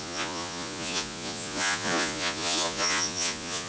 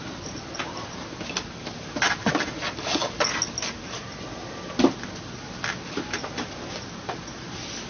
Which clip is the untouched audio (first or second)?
second